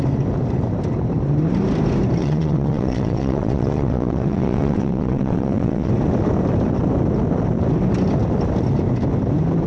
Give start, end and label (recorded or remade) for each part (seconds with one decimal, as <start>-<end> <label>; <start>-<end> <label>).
0.0-2.2 recorded; 2.2-5.9 remade; 5.9-9.7 recorded